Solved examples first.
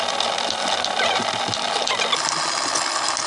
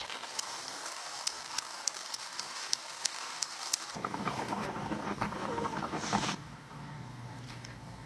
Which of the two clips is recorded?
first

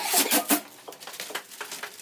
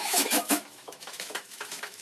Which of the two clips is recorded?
first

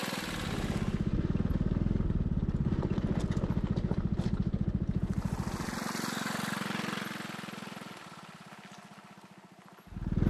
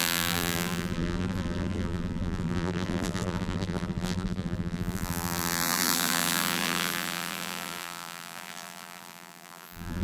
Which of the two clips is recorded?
first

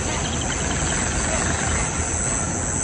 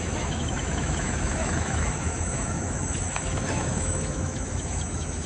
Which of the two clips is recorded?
first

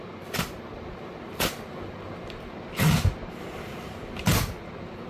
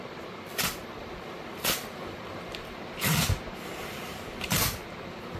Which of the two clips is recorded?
first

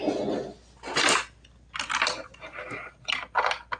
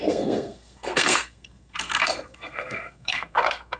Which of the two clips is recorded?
first